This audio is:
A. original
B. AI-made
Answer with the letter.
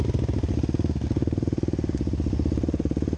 A